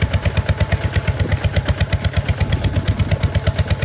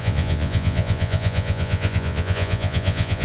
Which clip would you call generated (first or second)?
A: second